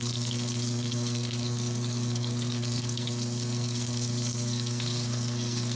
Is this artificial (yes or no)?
yes